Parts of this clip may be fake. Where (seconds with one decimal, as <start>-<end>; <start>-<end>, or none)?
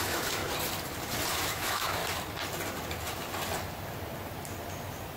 0.0-0.4; 1.3-2.0